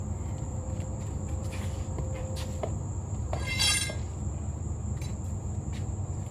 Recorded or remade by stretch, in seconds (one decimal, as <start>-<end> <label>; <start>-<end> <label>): 0.0-0.5 recorded; 0.5-3.7 remade; 3.7-6.3 recorded